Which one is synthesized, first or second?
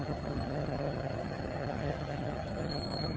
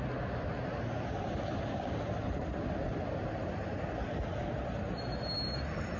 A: first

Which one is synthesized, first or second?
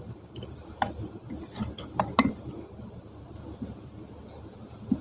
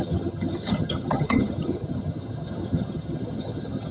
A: second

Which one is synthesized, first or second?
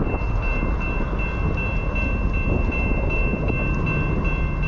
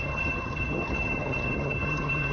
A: second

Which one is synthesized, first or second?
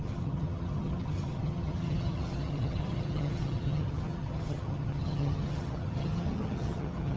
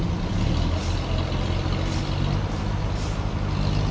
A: first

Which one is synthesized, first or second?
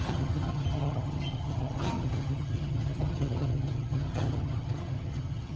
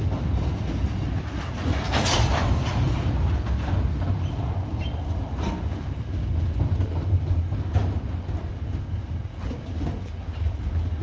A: first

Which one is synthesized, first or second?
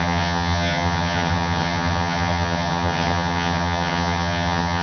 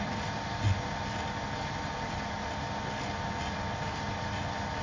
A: first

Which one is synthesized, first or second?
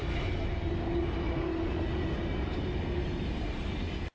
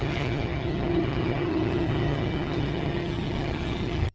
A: second